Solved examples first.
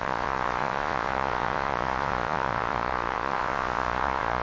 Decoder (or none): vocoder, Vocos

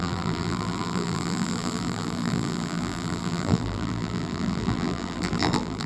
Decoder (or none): vocoder, BigVGAN v2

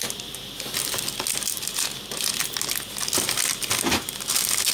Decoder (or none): none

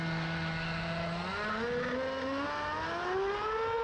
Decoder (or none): none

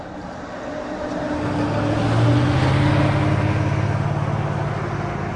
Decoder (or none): none